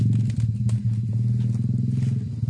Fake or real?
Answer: real